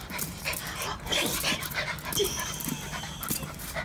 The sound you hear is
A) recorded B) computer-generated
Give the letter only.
A